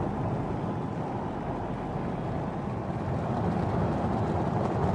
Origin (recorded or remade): recorded